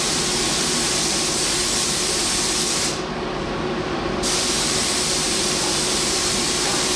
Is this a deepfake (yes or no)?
yes